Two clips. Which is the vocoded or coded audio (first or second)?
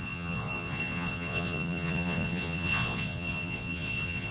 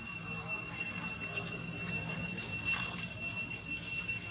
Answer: first